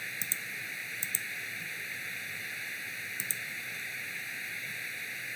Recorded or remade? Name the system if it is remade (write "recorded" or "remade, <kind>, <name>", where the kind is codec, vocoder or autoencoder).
recorded